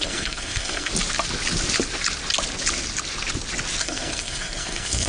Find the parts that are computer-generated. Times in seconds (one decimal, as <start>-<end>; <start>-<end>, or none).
0.0-0.9; 3.8-5.1